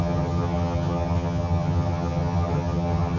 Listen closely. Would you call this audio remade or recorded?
remade